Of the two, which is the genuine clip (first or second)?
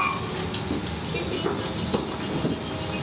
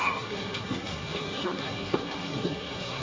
first